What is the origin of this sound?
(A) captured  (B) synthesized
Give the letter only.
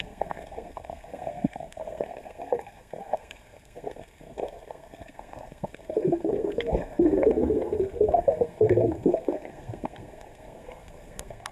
B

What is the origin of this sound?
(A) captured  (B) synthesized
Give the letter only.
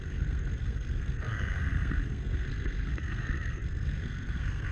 B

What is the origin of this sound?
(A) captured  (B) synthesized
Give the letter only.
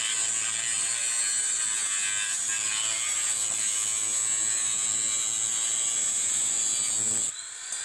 A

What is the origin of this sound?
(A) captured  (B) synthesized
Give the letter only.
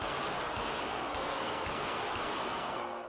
B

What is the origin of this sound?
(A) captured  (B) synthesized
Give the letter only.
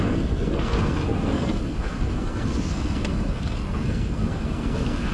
B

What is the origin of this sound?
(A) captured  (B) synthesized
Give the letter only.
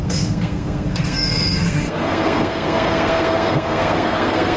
B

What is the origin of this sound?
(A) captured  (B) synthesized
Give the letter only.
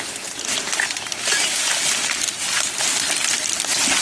A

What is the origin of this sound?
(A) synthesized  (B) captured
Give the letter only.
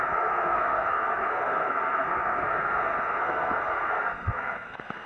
A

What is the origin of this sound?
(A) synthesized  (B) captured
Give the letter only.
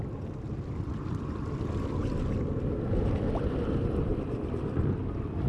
B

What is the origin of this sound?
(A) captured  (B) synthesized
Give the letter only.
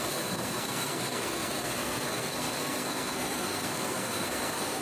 B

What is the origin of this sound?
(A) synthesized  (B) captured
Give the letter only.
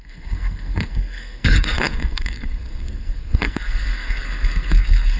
A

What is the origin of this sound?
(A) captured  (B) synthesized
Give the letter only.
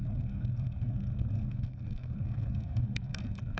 B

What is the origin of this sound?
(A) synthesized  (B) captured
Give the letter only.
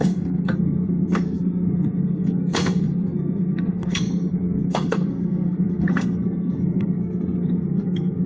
A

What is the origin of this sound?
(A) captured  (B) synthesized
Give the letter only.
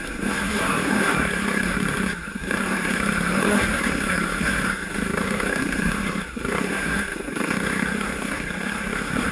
B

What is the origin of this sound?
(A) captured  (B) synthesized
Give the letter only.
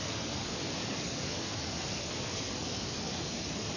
B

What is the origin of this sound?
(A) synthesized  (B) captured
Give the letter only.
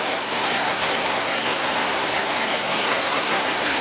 A